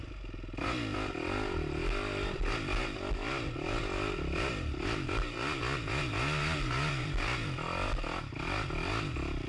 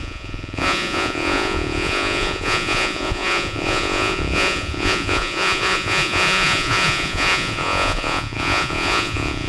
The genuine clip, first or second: first